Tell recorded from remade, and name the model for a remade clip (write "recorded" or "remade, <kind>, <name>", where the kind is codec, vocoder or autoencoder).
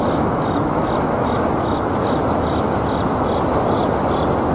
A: recorded